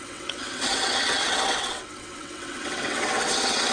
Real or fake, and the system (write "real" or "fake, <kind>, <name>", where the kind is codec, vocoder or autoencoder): fake, vocoder, WaveNeXt